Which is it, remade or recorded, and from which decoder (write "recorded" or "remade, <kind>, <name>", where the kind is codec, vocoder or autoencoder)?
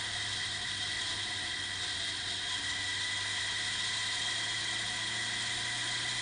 recorded